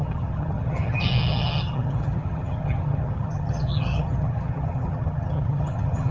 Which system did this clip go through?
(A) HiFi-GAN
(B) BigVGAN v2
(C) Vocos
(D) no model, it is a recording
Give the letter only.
A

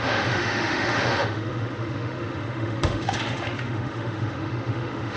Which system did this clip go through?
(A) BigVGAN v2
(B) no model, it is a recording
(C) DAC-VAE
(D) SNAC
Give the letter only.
C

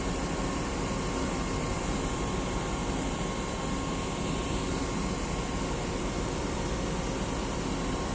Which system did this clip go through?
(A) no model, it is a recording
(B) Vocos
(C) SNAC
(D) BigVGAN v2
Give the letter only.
D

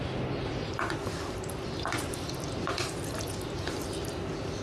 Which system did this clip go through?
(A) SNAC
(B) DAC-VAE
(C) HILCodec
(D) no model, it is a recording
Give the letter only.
D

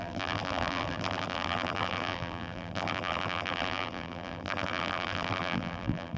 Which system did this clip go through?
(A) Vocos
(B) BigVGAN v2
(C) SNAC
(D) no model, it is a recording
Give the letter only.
B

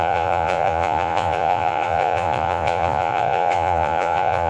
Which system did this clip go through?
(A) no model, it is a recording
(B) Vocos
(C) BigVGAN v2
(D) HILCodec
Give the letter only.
B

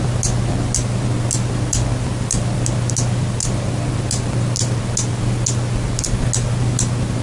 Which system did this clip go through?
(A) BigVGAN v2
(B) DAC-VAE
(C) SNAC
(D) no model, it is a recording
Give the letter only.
D